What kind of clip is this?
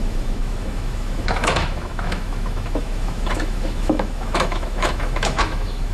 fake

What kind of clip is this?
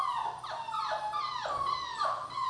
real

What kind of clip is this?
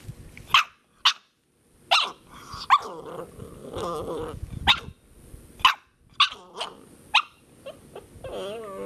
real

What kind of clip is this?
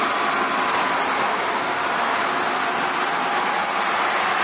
real